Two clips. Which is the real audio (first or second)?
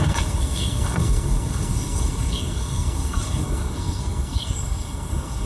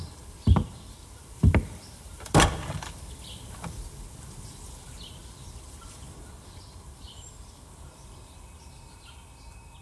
second